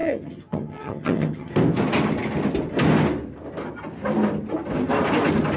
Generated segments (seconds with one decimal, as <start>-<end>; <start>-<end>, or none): 0.0-1.5